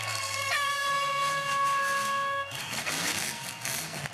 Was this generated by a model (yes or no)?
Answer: yes